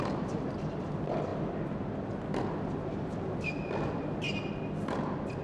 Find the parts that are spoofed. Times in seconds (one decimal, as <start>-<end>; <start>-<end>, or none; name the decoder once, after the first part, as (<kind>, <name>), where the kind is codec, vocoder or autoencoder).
none